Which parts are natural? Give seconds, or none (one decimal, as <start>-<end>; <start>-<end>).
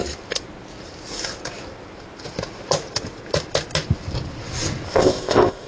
0.0-4.9